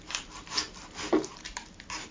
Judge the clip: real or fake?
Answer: real